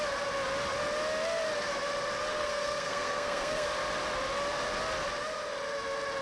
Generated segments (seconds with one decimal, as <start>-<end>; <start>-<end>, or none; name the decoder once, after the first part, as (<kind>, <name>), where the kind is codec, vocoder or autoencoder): 2.3-3.7 (codec, SNAC)